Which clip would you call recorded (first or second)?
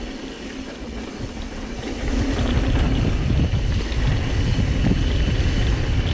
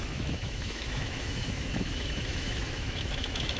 first